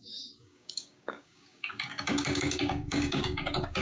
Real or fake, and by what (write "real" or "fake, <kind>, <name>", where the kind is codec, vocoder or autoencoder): fake, codec, DAC